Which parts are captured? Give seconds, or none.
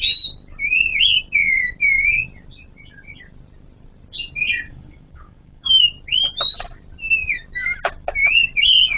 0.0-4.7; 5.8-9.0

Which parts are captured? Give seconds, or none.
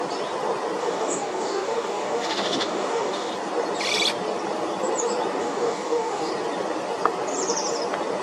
0.0-0.8; 3.3-5.4; 6.3-8.2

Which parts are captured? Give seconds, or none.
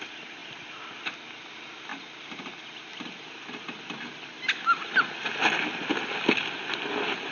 0.0-7.3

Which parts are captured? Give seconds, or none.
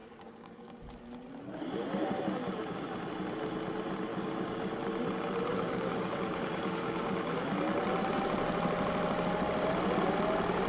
0.8-4.1; 4.9-5.5; 7.6-10.7